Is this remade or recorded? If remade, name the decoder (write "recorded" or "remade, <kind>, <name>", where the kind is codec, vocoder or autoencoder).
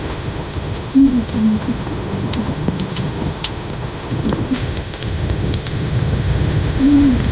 remade, autoencoder, DAC-VAE